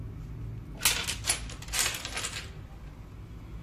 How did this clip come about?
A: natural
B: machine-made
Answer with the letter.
A